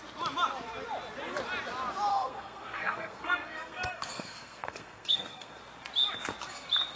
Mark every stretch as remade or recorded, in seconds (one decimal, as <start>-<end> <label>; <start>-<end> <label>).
0.0-2.1 recorded; 2.1-5.6 remade; 5.6-7.0 recorded